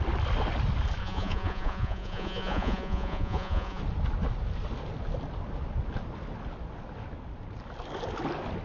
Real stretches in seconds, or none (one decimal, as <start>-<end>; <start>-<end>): 0.0-1.0; 3.8-8.6

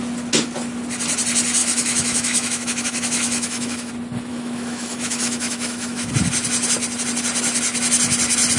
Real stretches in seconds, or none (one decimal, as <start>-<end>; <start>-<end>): 0.0-1.6; 3.9-4.3; 6.1-8.6

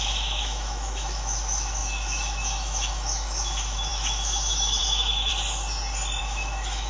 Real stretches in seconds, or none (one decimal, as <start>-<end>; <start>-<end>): 5.3-6.2